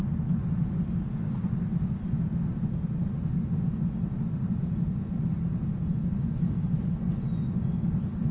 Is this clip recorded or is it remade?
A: recorded